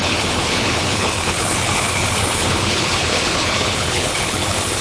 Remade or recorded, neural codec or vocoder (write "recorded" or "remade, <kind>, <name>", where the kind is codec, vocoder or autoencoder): remade, codec, HILCodec